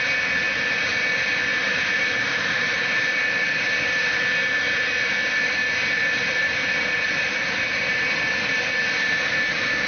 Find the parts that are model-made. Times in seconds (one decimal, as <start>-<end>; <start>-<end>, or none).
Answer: 1.5-3.2